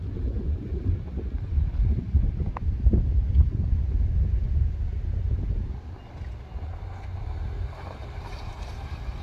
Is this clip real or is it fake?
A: real